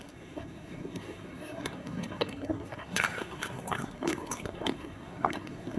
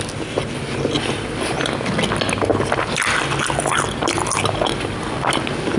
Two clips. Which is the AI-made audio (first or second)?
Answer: first